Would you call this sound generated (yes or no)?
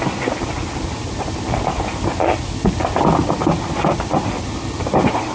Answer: no